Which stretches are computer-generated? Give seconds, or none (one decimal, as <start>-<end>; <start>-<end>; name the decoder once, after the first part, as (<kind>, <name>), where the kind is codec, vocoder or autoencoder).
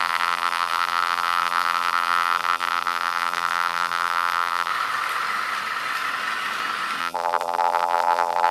0.0-4.7 (vocoder, BigVGAN v2); 7.0-8.5